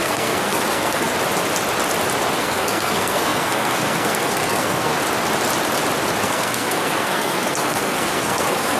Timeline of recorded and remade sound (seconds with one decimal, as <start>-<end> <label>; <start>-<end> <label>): 0.0-1.1 remade; 1.1-2.4 recorded; 2.4-4.9 remade; 4.9-6.2 recorded; 6.2-8.8 remade